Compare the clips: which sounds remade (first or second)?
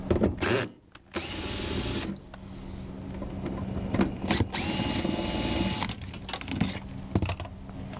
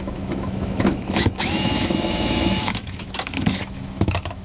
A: second